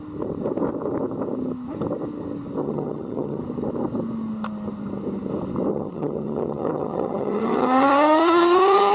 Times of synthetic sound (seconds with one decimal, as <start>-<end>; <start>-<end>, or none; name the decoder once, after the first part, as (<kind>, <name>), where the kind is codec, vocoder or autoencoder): 2.6-3.4 (vocoder, HiFi-GAN); 5.7-8.9